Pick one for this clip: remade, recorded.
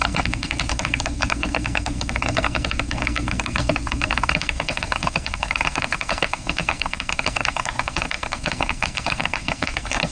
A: remade